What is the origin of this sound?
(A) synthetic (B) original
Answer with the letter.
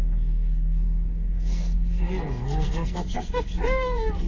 A